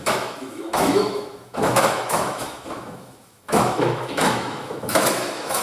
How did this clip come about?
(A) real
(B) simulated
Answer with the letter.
B